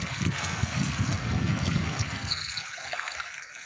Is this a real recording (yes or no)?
no